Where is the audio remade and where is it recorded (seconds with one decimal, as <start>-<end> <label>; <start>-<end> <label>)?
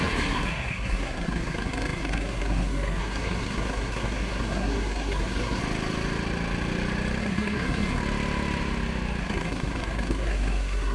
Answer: 0.0-5.6 remade; 5.6-7.2 recorded; 7.2-8.0 remade; 8.0-9.2 recorded; 9.2-10.9 remade